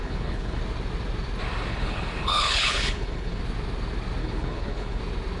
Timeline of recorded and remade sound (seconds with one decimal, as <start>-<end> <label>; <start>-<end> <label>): 0.0-0.6 remade; 0.6-1.7 recorded; 1.7-3.4 remade; 3.4-4.2 recorded; 4.2-5.0 remade; 5.0-5.4 recorded